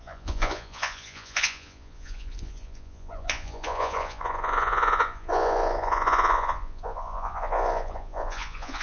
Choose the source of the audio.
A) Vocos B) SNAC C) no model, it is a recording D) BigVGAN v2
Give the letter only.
A